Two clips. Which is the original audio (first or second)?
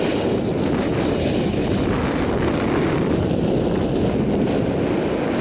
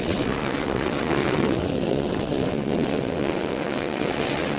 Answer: first